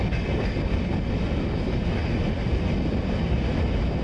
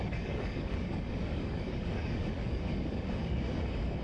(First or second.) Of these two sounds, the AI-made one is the second